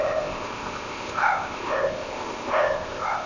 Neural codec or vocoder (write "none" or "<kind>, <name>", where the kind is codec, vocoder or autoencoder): codec, ZipCodec